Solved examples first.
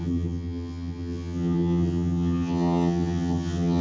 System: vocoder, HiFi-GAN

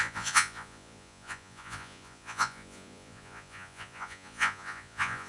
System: vocoder, Vocos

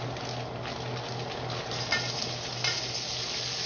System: none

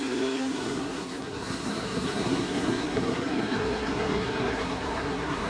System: codec, SNAC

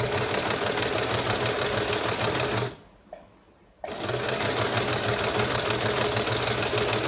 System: none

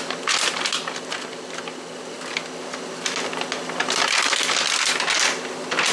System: none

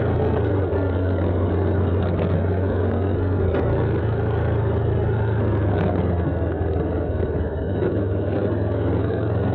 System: codec, SNAC